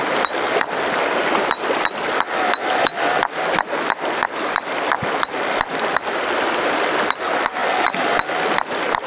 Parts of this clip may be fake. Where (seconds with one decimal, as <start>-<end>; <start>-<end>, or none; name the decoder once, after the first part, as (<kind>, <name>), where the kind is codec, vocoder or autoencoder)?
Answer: none